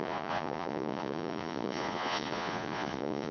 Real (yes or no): no